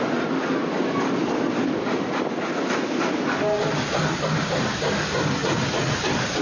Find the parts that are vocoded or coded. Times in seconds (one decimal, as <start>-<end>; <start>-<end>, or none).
5.4-6.0